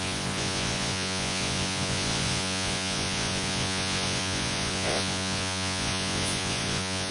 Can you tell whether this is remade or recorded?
remade